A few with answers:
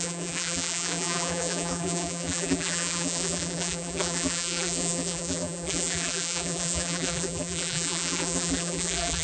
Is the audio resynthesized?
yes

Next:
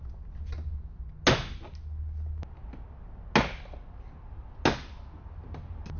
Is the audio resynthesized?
no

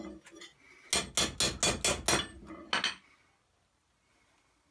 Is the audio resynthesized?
no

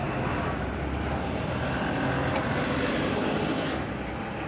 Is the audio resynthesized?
no